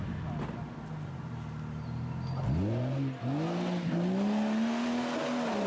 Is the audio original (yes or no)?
yes